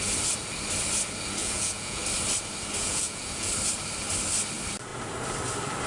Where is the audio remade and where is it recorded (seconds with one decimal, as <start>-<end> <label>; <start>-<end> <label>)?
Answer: 0.0-1.4 recorded; 1.4-2.0 remade; 2.0-2.8 recorded; 2.8-3.5 remade; 3.5-5.9 recorded